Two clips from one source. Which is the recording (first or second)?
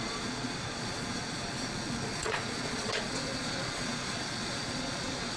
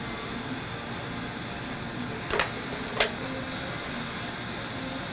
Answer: second